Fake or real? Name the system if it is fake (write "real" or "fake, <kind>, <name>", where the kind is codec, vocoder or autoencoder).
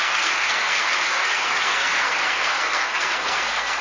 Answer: fake, codec, SNAC